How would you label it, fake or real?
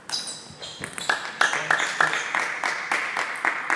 real